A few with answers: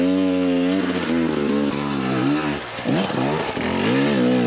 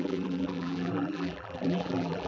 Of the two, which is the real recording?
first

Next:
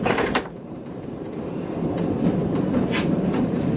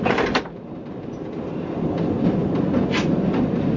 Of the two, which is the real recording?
second